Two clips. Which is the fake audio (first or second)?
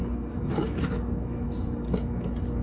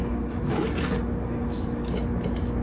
first